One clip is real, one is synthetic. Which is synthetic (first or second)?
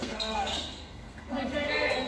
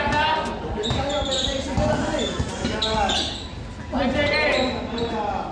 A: first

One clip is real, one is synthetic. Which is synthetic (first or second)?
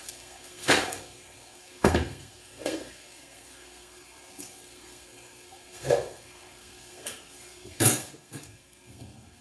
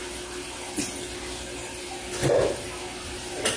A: first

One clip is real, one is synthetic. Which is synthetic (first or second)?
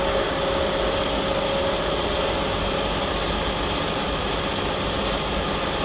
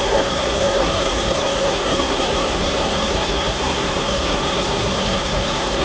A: second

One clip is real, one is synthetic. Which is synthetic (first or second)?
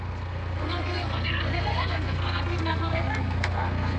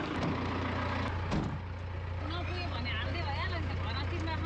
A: first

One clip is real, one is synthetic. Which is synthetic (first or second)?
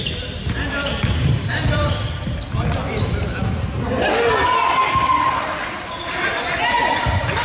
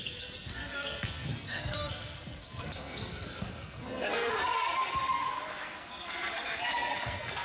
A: second